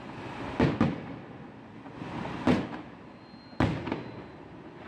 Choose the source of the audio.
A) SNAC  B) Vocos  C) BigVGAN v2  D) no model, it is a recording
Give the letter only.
D